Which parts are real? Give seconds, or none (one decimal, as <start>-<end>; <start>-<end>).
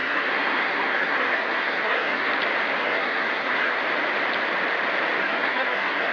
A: 2.3-2.8; 3.8-5.2